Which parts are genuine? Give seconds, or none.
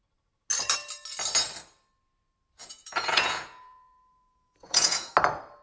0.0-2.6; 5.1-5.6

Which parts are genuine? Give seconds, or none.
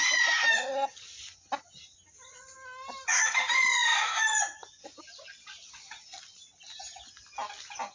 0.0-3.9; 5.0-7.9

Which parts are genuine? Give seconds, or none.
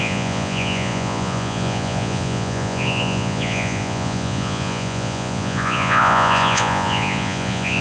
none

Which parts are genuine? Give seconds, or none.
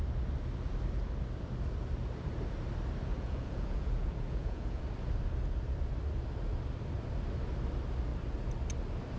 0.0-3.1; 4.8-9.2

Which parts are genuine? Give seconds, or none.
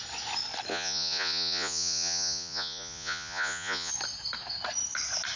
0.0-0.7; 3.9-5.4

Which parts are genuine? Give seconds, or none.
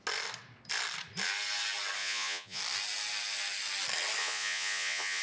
0.0-2.0; 2.6-4.2